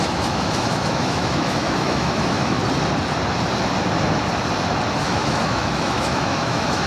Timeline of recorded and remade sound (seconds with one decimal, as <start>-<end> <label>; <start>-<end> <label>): 0.0-2.6 remade; 2.6-5.0 recorded; 5.0-6.9 remade